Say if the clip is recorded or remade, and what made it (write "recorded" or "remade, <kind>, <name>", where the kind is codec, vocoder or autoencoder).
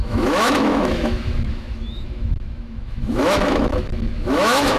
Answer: remade, autoencoder, DAC-VAE